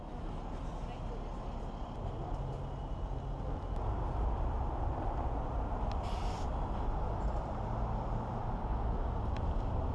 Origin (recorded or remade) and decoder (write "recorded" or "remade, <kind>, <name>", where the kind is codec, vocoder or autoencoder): recorded